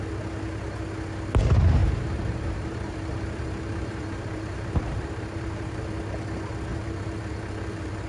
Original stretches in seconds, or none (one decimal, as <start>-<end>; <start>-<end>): 0.0-1.8; 5.8-6.7